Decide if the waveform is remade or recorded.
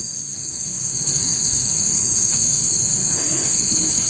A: remade